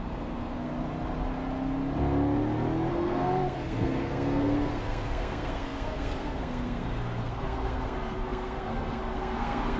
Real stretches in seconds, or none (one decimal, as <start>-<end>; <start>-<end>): 0.7-2.9